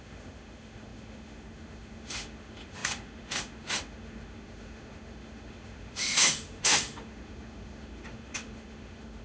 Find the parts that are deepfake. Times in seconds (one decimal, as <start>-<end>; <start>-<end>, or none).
0.0-9.2